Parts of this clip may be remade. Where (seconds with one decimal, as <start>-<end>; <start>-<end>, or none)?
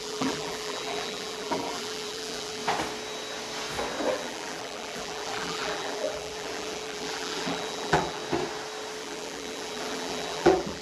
0.0-2.6; 4.1-8.2; 9.0-10.8